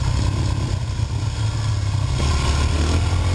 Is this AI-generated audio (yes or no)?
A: no